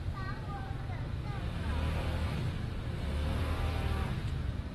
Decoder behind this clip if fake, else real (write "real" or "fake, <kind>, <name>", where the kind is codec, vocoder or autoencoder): real